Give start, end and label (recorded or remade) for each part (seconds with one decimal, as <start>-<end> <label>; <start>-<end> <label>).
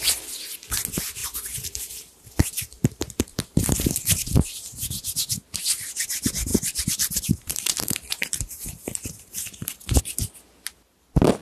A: 0.0-1.2 recorded; 1.2-4.7 remade; 4.7-6.5 recorded; 6.5-10.0 remade; 10.0-11.4 recorded